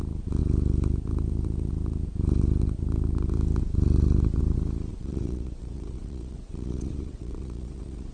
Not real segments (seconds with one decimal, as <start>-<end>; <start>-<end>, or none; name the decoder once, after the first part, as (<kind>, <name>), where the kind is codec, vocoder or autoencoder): 4.9-8.1 (vocoder, WaveNeXt)